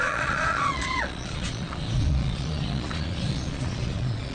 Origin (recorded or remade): remade